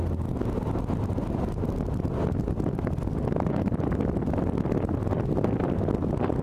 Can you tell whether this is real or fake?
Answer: real